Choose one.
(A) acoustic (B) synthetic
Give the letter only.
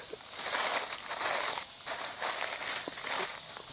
A